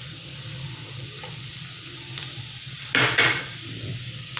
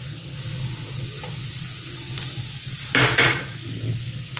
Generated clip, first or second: first